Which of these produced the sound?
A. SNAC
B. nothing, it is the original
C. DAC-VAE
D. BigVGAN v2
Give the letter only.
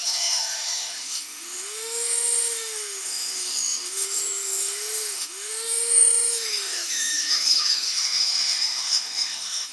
C